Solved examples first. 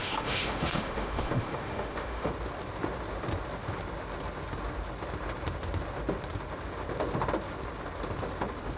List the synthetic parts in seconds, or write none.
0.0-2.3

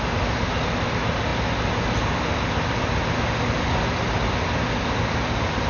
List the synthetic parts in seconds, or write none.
none

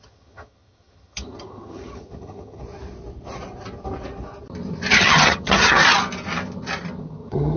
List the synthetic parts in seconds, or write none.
0.0-2.6; 4.9-5.8; 7.0-7.6

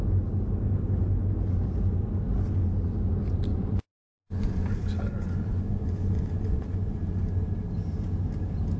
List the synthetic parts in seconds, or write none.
3.5-4.6; 5.5-7.0

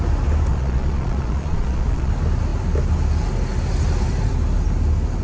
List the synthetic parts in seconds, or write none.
0.5-2.1

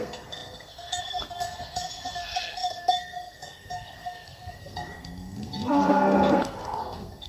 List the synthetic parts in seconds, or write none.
0.0-7.3